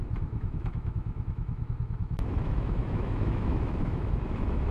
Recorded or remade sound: remade